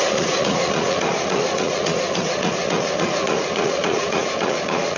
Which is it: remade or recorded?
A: remade